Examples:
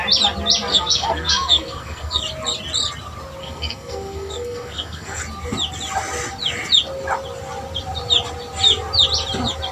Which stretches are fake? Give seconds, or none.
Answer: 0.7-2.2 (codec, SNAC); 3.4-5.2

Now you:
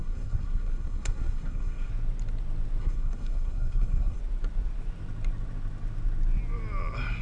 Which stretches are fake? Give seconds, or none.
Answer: 0.0-1.9 (codec, SNAC); 2.8-4.2